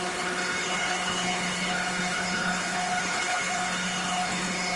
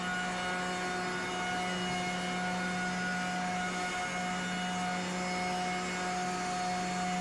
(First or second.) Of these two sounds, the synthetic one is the first